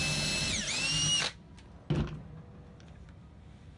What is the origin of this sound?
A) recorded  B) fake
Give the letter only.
A